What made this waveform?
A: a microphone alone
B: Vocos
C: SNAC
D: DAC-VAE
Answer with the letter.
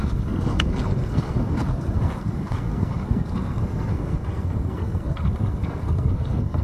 C